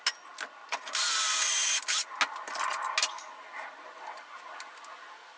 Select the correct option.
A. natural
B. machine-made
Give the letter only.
A